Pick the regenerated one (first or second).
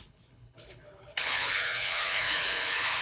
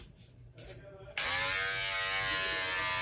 first